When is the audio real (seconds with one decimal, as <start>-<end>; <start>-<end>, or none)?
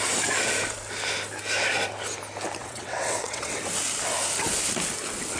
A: 0.0-2.6; 3.6-5.4